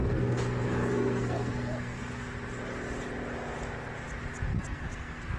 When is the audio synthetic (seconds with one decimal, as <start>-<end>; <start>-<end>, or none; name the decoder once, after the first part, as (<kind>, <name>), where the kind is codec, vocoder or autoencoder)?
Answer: 0.0-2.0 (codec, SNAC); 4.5-5.4

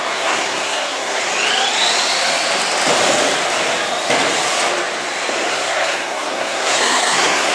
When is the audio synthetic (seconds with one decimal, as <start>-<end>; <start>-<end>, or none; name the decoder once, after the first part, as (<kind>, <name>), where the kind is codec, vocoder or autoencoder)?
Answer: 0.0-1.2 (codec, SNAC); 5.5-7.5

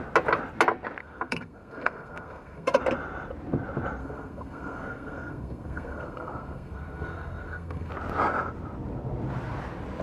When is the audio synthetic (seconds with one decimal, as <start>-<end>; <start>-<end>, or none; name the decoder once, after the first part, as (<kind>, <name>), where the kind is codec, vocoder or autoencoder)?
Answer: 1.0-2.8 (codec, SNAC); 4.0-7.9

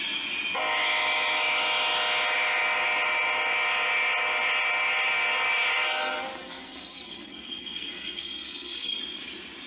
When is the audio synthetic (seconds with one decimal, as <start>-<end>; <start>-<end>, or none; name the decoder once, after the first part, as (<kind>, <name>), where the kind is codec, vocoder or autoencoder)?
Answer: 6.4-9.0 (codec, SNAC)